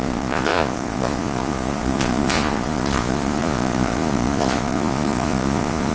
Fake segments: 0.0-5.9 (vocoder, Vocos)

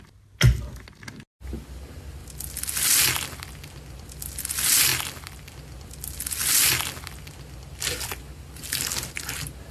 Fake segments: none

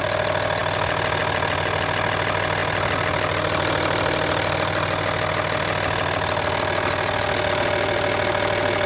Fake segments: none

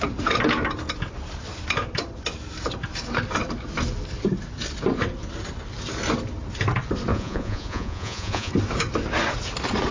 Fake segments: 7.1-8.5 (vocoder, Vocos)

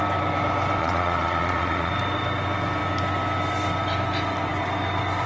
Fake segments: 0.8-1.9 (vocoder, Vocos)